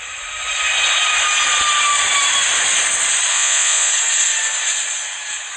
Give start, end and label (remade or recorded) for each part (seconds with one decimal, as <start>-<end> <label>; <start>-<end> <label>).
0.0-3.3 recorded; 3.3-3.9 remade; 3.9-5.6 recorded